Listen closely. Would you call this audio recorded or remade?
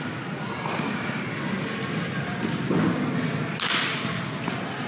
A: recorded